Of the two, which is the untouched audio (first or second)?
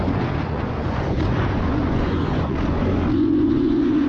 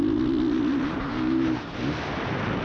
second